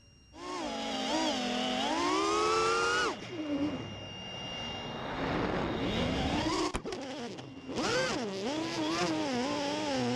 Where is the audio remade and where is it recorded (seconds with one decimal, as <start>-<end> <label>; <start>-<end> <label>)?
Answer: 0.0-10.2 recorded